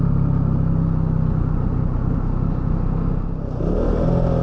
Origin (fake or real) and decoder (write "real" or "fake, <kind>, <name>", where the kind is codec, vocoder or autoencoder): real